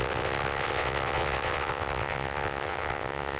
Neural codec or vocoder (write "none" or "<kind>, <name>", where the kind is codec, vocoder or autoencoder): vocoder, WaveNeXt